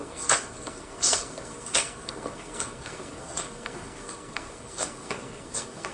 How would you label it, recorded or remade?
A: remade